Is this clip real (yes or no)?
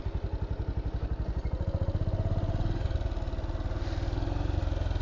yes